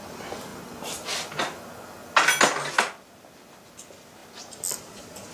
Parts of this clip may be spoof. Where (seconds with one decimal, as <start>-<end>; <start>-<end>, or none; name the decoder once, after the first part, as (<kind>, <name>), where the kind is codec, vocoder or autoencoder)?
none